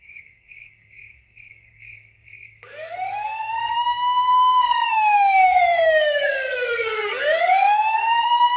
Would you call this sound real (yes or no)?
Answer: no